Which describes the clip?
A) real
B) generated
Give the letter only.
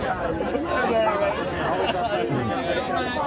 A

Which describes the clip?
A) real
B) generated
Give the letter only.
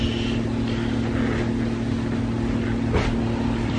A